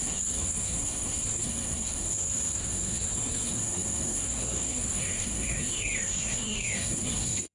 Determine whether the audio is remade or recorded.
remade